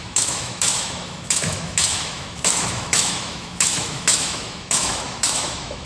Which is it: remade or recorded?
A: remade